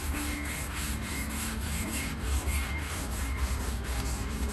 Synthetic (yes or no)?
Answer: yes